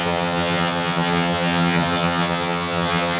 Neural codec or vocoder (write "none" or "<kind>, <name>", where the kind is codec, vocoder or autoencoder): vocoder, HiFi-GAN